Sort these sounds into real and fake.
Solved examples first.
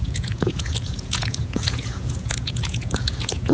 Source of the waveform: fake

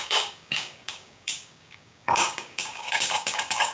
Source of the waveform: fake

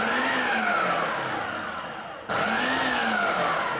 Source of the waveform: real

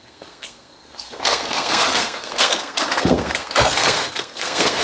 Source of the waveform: fake